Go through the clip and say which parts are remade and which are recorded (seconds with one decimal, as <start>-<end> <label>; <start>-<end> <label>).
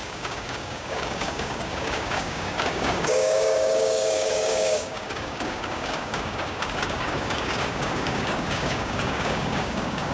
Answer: 0.0-10.1 remade